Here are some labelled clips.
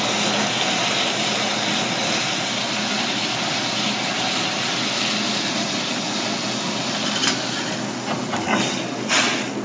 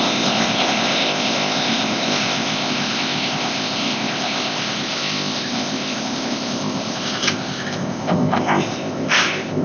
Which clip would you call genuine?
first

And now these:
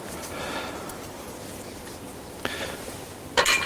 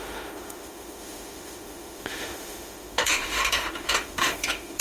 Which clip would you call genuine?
first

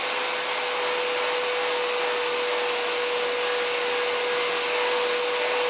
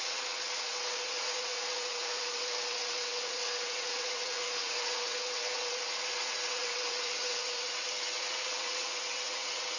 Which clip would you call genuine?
first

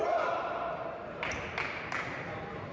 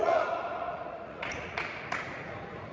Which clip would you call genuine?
first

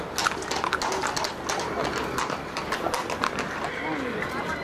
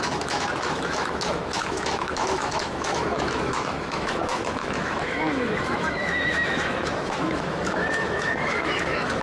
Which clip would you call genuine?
first